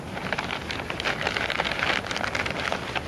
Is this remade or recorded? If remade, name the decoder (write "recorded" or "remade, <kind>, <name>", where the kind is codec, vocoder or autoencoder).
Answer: recorded